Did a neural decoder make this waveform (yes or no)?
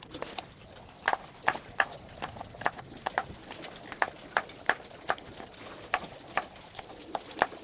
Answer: no